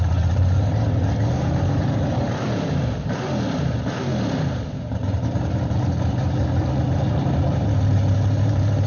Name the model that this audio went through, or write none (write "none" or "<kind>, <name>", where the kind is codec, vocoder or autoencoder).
vocoder, BigVGAN v2